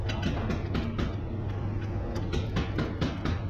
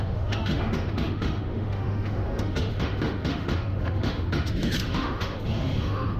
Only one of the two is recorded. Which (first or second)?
first